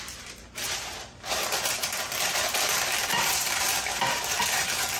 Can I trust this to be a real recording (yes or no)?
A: no